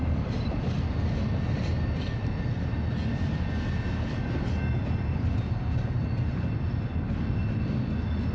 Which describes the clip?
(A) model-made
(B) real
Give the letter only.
B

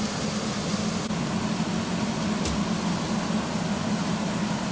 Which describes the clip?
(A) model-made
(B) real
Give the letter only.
B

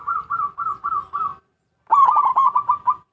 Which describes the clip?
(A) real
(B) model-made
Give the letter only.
A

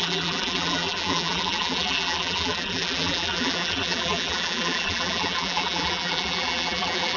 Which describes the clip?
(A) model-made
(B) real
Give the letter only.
A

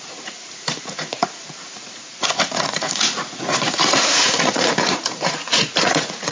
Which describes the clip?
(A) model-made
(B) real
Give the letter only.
A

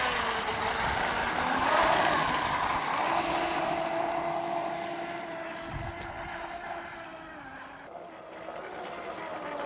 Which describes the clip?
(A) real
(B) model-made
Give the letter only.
A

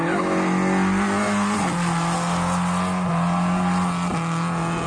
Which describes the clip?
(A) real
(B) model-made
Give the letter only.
A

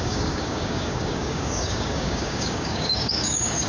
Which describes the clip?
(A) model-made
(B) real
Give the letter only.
A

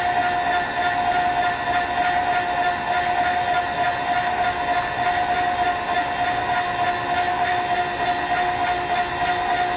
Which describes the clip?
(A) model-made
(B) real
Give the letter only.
B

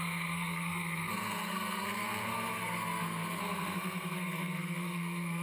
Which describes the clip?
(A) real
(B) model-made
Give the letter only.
B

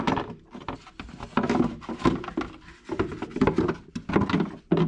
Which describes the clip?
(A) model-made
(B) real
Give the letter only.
B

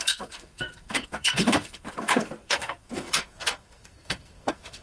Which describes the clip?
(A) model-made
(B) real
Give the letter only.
A